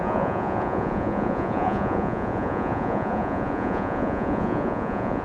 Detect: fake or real fake